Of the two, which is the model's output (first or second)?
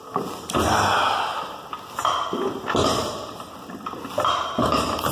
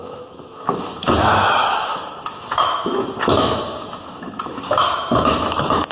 second